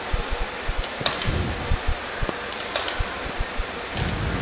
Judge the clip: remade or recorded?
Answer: remade